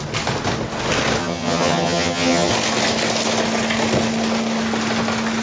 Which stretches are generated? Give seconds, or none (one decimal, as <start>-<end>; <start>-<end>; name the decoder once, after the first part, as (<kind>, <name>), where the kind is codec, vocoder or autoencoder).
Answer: 1.2-2.5 (vocoder, HiFi-GAN)